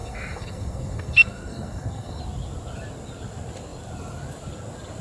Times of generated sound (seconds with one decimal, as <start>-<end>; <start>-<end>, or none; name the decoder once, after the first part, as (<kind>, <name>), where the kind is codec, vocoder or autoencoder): 0.0-2.2 (codec, SNAC)